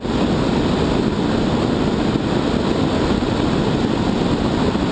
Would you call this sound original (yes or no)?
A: yes